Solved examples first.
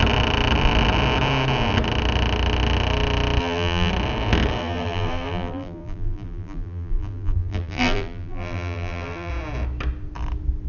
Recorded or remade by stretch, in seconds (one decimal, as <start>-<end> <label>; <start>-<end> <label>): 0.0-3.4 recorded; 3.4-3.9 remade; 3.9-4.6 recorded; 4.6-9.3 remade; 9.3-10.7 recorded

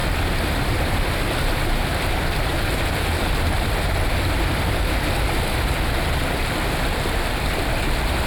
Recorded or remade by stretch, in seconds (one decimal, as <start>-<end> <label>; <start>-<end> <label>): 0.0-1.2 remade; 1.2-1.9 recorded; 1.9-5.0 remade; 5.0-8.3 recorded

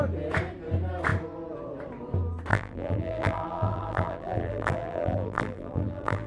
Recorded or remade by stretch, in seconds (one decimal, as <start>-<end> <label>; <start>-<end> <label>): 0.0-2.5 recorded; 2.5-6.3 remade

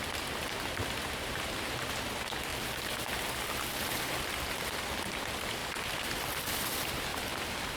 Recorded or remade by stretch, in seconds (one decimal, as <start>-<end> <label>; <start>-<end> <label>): 0.0-5.6 remade; 5.6-6.2 recorded; 6.2-7.1 remade; 7.1-7.8 recorded